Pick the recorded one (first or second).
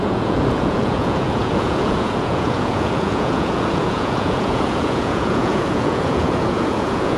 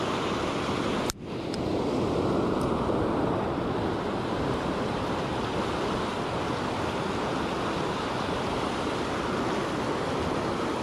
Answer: second